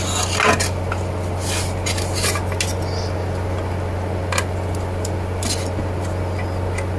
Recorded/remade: recorded